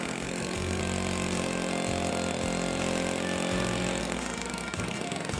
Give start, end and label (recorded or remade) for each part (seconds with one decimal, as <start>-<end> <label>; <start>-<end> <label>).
0.0-0.8 remade; 0.8-4.0 recorded; 4.0-5.4 remade